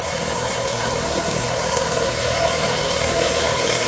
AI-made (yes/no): yes